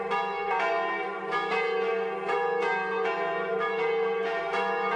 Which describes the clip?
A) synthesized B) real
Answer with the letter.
B